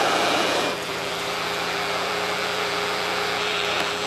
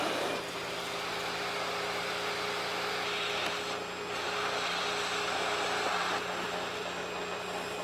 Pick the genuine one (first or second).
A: second